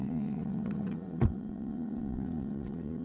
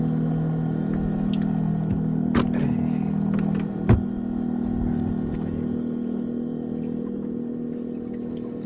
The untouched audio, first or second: second